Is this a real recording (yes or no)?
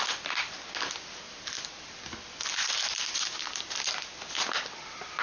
yes